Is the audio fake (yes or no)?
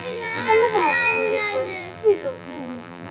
yes